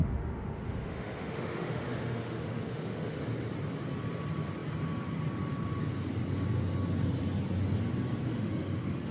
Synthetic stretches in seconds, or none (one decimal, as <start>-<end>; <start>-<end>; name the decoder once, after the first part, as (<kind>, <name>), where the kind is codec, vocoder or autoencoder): 0.0-3.2 (autoencoder, DAC-VAE); 8.3-9.1